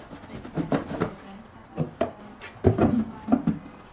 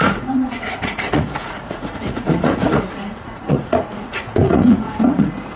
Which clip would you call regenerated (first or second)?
second